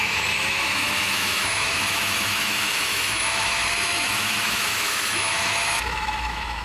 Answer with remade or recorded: remade